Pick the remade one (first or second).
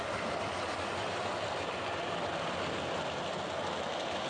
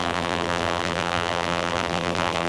second